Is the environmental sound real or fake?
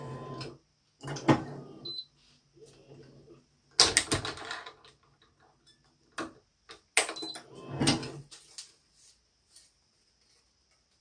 real